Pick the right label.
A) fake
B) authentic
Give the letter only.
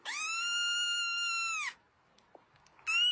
B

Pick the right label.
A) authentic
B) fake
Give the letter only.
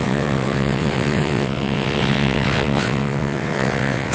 B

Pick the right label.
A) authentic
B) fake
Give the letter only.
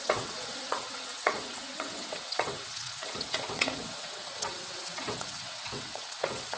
B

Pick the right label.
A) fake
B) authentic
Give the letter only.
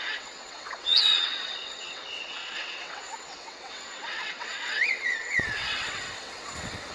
A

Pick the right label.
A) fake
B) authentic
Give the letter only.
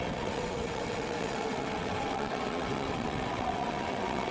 A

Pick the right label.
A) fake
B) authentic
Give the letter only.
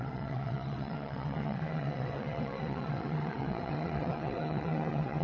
A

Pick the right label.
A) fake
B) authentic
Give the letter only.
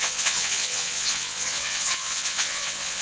A